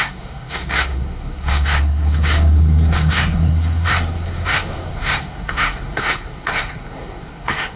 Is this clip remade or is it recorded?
remade